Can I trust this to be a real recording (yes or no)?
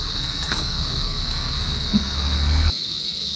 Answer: no